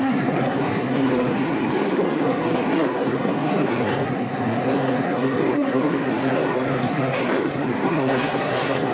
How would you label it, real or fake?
fake